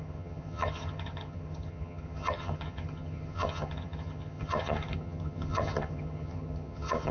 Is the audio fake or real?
fake